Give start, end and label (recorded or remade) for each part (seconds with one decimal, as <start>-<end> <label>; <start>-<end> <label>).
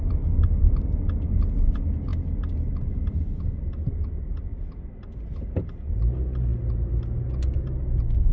0.0-8.3 recorded